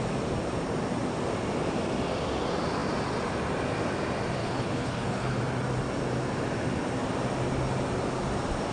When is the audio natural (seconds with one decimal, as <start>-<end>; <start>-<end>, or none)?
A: 0.0-4.4; 5.4-8.7